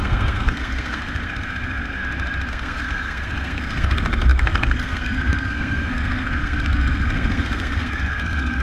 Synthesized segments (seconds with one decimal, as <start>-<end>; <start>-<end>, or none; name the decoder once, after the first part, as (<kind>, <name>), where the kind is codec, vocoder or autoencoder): 0.0-2.0 (codec, SNAC); 2.5-8.6